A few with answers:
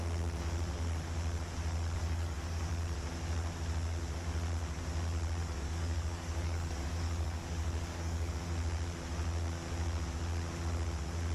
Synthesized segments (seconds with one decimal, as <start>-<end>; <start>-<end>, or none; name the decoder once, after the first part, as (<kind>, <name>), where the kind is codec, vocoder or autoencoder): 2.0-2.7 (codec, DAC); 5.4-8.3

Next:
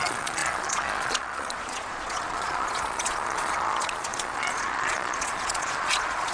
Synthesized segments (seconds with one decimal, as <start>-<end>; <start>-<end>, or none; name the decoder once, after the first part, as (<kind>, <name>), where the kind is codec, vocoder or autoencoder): 0.0-6.3 (vocoder, Vocos)

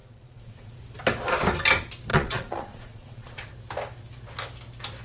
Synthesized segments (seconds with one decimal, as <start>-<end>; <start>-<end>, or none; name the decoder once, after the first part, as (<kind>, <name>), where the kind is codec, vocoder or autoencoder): 0.0-0.8 (vocoder, Vocos); 2.1-3.5

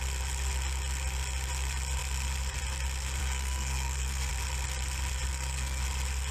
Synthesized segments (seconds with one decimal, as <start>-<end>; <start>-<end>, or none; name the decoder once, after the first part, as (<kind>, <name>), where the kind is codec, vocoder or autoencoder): 3.2-4.3 (codec, SNAC); 5.3-5.8

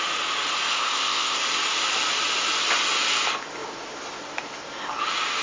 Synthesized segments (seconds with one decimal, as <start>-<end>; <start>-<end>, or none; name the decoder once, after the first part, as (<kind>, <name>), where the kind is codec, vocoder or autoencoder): 0.7-1.4 (codec, ZipCodec)

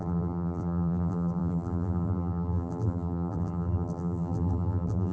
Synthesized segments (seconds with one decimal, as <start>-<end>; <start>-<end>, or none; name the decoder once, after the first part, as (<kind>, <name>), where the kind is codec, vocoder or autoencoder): 0.0-5.1 (vocoder, BigVGAN v2)

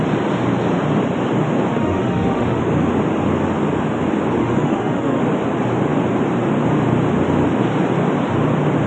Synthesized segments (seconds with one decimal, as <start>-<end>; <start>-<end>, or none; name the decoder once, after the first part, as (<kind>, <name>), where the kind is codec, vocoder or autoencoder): 1.7-2.6 (autoencoder, DAC-VAE); 4.4-5.2

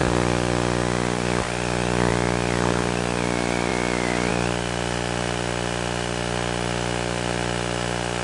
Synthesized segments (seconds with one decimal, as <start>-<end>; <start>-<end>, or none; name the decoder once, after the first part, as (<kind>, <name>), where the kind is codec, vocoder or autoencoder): none